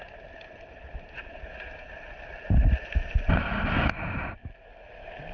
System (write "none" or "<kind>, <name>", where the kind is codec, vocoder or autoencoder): none